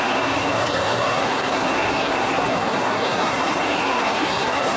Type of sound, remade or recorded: remade